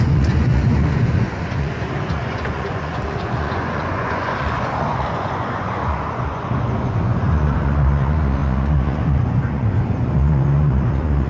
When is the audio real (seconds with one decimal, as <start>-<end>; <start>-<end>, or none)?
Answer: none